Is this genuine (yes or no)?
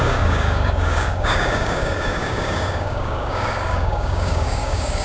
no